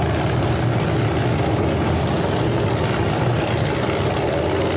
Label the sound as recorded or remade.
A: recorded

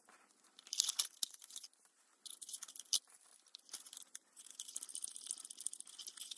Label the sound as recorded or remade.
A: recorded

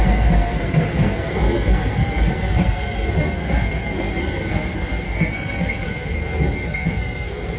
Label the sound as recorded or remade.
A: remade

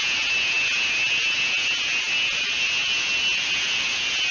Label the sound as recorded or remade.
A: recorded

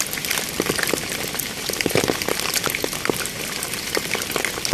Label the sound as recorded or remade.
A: recorded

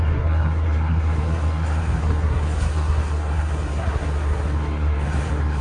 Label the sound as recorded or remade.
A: remade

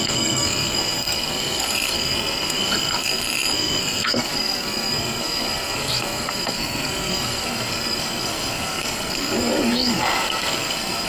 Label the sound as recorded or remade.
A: remade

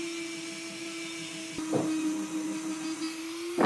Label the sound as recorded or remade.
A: recorded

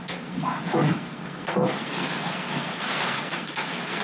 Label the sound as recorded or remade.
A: remade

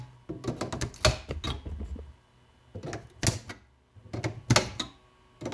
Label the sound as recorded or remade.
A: recorded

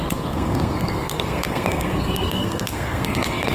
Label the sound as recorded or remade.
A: remade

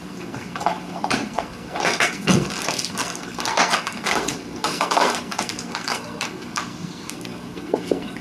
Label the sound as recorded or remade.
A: remade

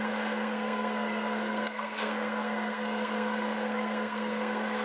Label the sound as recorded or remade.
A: remade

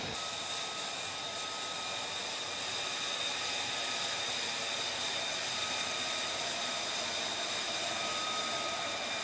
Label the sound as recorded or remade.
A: recorded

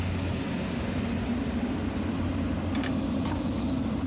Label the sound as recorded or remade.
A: recorded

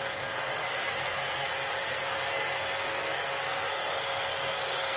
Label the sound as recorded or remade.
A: remade